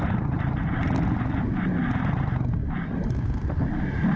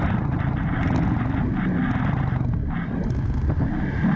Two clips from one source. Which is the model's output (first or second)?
first